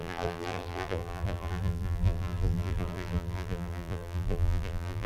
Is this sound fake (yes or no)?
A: yes